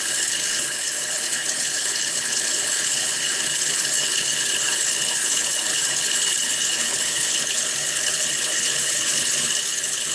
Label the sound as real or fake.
fake